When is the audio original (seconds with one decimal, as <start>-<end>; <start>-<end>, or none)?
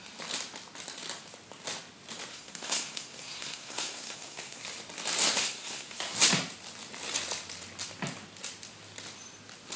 0.0-2.3; 4.6-5.4; 6.0-9.8